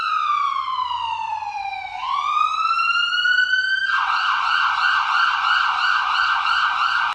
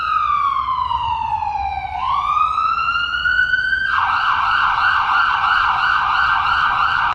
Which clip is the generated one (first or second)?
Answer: second